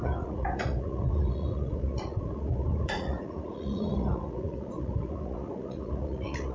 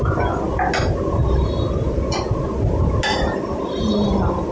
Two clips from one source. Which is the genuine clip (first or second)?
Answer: second